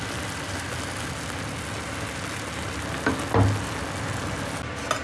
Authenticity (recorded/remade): recorded